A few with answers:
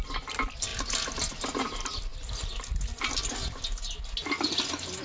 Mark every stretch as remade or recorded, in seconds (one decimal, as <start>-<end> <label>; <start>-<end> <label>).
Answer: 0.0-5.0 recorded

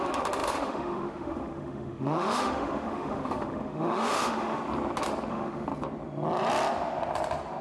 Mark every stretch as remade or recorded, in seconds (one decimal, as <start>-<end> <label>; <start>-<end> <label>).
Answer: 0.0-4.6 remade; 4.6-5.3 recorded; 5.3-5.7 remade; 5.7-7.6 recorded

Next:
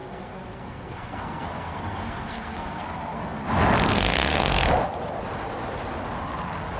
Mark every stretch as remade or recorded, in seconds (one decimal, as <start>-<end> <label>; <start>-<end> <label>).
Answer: 0.0-3.4 remade; 3.4-3.9 recorded; 3.9-4.7 remade; 4.7-6.8 recorded